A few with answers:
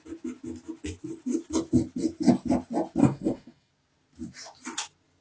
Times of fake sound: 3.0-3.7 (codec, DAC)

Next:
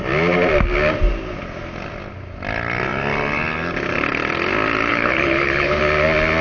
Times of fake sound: 4.9-5.8 (codec, HILCodec)

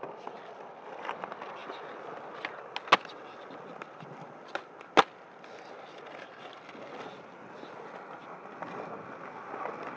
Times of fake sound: 1.6-2.4 (vocoder, BigVGAN v2)

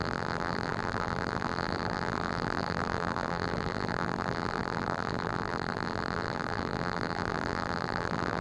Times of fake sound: 0.0-8.4 (vocoder, BigVGAN v2)

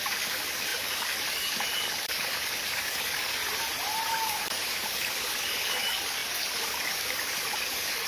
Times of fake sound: 0.0-3.4 (codec, DAC); 4.1-8.1